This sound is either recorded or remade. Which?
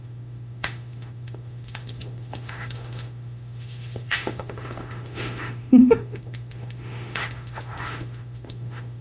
remade